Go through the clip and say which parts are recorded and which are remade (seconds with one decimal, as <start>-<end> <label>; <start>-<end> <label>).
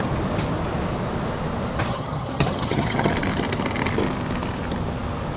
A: 0.0-1.9 recorded; 1.9-3.1 remade; 3.1-5.4 recorded